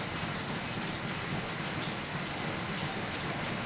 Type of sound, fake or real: real